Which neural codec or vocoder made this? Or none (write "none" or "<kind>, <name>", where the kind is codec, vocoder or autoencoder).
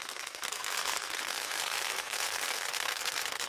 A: codec, SNAC